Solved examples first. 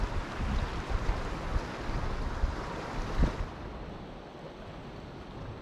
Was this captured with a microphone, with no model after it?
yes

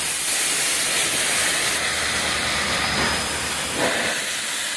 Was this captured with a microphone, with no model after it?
yes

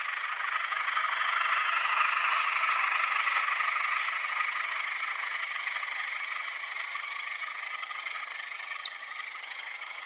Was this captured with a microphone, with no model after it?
no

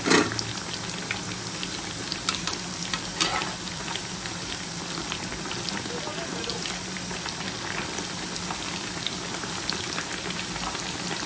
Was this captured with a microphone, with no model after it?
yes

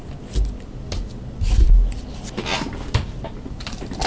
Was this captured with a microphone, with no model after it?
yes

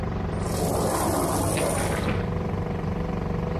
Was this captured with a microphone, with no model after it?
yes